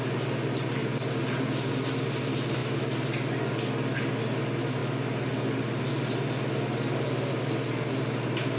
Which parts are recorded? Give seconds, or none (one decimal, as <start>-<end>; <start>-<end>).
0.0-8.6